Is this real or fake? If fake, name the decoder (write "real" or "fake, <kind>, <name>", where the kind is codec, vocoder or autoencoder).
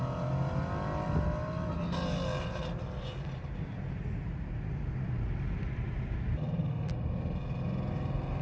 real